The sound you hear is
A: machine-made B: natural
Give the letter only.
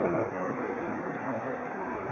A